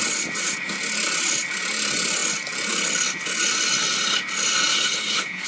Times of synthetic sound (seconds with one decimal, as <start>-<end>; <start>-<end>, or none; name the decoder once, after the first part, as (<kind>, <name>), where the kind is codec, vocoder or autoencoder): 4.7-5.5 (codec, HILCodec)